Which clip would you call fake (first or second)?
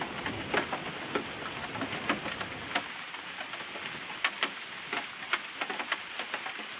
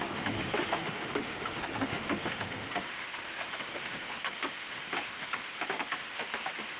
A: second